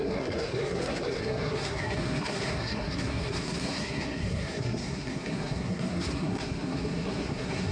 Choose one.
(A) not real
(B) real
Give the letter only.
A